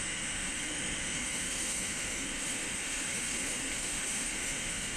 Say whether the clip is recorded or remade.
remade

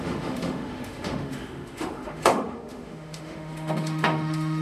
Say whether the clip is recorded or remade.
remade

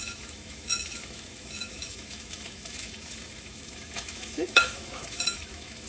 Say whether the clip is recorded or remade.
remade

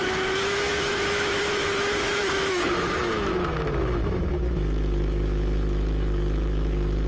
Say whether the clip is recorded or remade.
remade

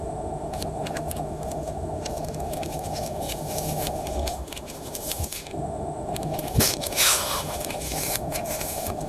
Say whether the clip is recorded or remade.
remade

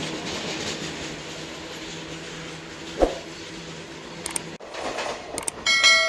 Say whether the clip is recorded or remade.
recorded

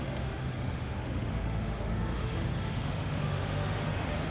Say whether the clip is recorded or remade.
remade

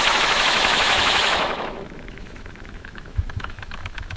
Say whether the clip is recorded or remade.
remade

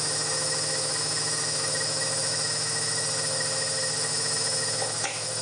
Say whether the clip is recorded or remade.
remade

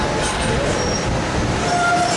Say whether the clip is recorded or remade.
recorded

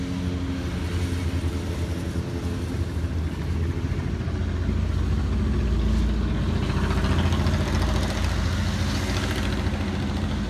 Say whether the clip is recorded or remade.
recorded